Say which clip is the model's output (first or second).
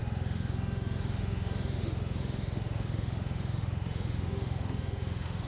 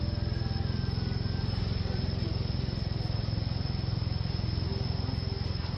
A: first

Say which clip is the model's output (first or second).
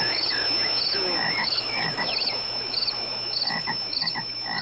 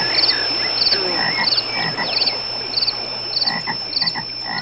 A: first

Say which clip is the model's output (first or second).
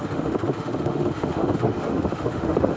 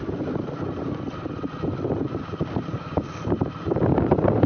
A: first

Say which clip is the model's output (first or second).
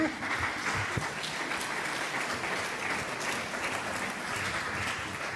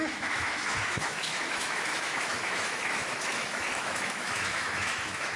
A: second